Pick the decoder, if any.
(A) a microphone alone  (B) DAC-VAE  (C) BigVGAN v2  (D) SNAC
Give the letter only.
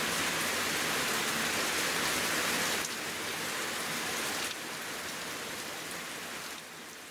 A